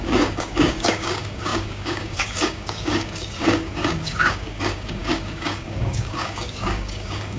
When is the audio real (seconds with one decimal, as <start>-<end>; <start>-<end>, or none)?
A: none